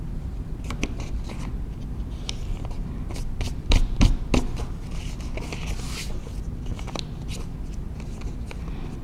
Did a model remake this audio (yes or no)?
no